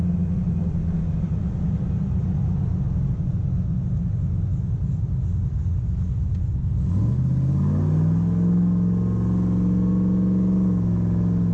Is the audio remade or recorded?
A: recorded